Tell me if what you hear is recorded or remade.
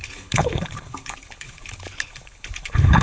remade